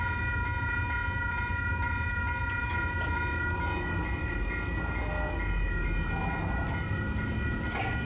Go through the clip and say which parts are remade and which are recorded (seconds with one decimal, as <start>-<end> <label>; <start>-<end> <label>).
0.0-8.0 recorded